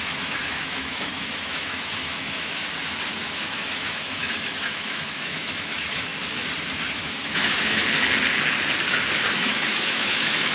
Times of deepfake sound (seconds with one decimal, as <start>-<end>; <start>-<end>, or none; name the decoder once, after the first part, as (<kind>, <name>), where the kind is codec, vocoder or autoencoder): 0.0-2.6 (autoencoder, DAC-VAE); 3.2-6.1; 6.9-7.8; 9.3-10.5